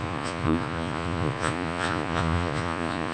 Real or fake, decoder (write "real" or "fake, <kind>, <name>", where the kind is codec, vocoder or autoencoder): fake, vocoder, Vocos